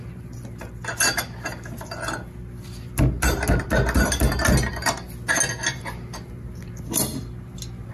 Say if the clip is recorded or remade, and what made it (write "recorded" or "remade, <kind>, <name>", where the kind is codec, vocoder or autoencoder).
recorded